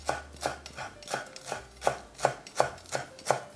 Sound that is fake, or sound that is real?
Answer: real